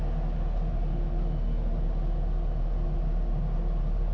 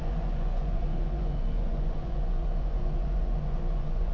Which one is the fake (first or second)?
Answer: second